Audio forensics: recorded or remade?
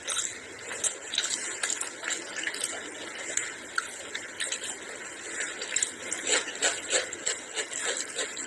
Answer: recorded